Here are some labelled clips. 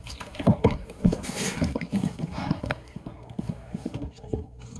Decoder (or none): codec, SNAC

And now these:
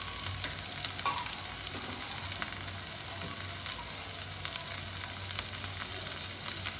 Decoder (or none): none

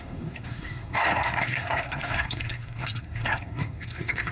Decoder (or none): codec, SNAC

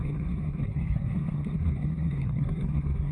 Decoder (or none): codec, SNAC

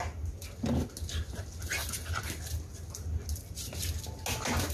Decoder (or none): none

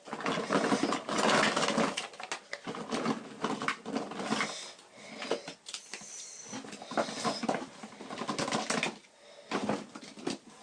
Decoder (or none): none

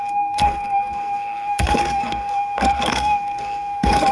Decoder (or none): codec, SNAC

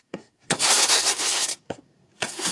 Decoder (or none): codec, SNAC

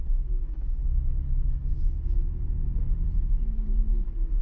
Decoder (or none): none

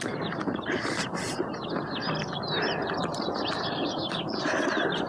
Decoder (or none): none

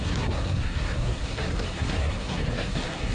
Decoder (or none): codec, SNAC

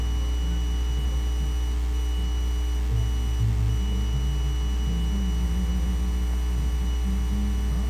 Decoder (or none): none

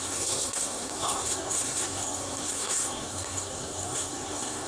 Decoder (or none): codec, SNAC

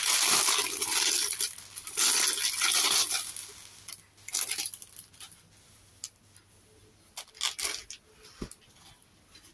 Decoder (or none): none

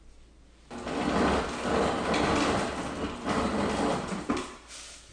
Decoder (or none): none